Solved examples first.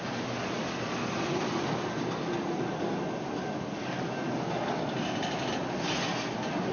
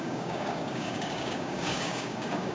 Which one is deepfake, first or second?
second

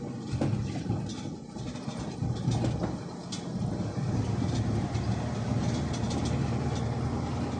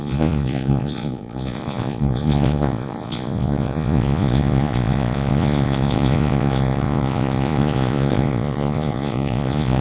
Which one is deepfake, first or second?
second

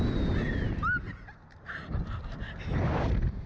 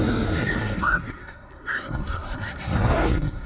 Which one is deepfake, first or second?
second